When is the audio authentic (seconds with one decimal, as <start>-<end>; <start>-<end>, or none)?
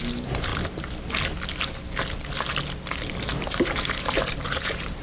0.5-3.5